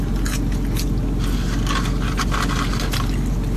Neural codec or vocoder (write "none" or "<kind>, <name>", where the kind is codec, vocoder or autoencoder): none